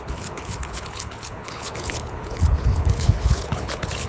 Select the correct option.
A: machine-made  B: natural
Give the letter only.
A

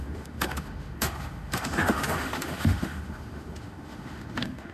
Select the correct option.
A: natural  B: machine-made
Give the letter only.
B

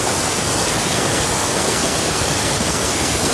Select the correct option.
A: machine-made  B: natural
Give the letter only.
A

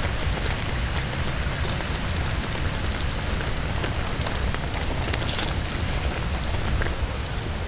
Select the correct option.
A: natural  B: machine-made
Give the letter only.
A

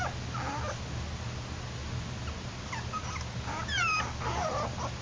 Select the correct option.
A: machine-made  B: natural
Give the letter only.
B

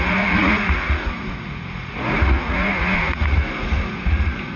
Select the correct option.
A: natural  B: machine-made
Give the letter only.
B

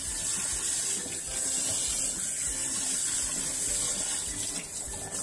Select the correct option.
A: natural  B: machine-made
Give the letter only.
A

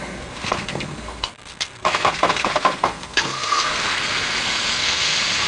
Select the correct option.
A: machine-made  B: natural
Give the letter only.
A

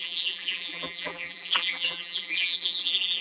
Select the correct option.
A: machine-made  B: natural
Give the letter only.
A